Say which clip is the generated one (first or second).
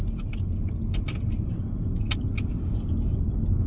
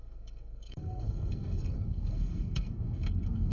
second